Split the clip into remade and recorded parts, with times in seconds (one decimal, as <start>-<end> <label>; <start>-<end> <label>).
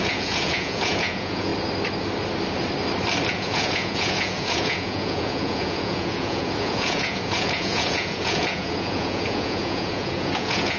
0.0-1.5 remade; 1.5-3.3 recorded; 3.3-10.8 remade